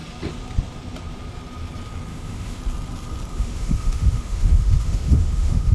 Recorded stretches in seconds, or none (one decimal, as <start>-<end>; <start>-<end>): 0.0-2.1; 2.6-3.3